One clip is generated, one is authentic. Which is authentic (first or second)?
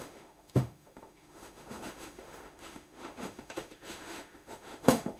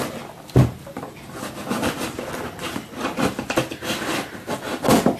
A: second